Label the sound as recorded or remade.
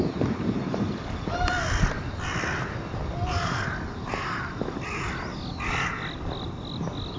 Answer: recorded